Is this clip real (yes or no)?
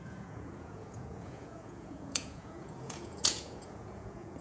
no